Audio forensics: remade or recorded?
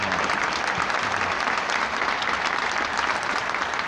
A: recorded